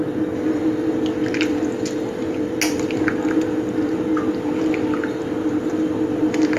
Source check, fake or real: real